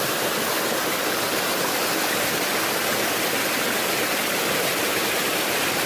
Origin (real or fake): real